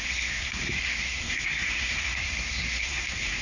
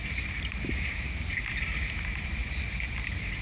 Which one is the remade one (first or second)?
first